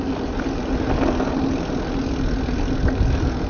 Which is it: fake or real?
real